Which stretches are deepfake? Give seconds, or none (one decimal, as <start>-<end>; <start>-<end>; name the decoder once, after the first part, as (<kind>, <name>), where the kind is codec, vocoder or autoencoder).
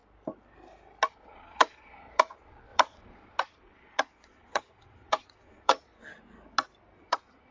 1.1-5.9 (vocoder, Vocos); 7.0-7.5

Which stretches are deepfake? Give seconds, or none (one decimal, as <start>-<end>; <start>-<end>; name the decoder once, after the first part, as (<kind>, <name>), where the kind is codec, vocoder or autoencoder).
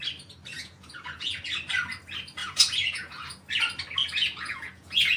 0.5-1.4 (vocoder, Vocos); 2.4-3.5; 4.0-5.2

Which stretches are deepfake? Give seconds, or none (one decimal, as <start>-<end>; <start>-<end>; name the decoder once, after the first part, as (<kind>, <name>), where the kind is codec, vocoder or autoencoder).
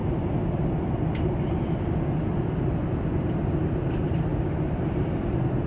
none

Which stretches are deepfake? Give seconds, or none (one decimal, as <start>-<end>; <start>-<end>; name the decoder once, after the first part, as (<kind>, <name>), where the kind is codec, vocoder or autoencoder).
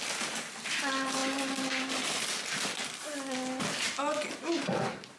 none